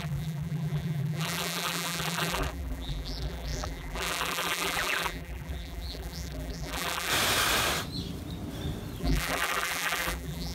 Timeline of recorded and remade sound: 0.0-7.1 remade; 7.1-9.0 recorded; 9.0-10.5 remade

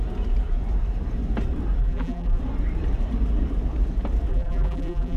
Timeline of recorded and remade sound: 0.0-1.8 recorded; 1.8-2.4 remade; 2.4-4.3 recorded; 4.3-5.2 remade

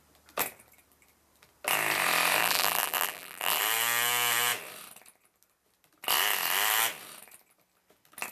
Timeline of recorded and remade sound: 0.0-2.4 recorded; 2.4-3.6 remade; 3.6-8.3 recorded

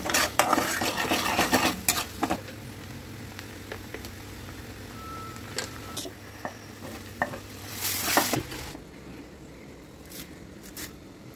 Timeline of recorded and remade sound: 0.0-0.9 remade; 0.9-3.2 recorded; 3.2-11.4 remade